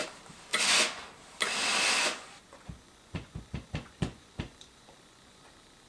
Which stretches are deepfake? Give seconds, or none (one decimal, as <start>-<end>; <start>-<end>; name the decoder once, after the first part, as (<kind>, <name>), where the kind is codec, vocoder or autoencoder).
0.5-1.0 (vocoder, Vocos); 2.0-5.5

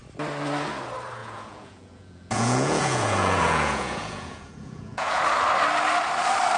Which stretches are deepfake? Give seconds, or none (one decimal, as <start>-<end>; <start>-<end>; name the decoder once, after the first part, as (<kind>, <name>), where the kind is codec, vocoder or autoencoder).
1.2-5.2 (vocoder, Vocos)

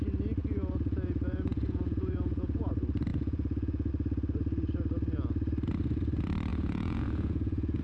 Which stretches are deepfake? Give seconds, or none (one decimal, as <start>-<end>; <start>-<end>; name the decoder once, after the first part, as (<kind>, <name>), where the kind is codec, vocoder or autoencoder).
0.4-2.7 (vocoder, Vocos); 3.1-3.9; 6.5-7.8

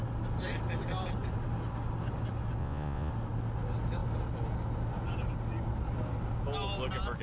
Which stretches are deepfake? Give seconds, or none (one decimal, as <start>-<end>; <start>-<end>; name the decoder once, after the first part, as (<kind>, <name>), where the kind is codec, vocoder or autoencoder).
2.6-3.1 (vocoder, Vocos)

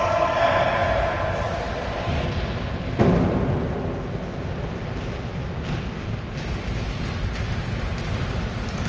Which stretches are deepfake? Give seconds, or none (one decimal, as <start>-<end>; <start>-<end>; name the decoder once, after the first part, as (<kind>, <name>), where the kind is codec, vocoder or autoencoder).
none

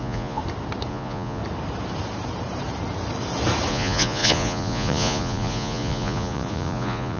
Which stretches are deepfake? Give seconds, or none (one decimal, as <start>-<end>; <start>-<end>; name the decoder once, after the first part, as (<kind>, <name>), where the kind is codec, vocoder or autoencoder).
0.0-0.4 (vocoder, Vocos); 0.9-1.4; 3.7-7.2

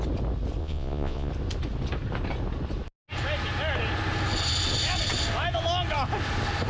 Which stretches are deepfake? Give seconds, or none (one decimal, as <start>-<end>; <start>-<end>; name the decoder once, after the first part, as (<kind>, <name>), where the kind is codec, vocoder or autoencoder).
0.6-1.3 (vocoder, Vocos)